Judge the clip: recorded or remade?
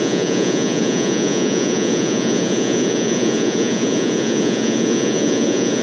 remade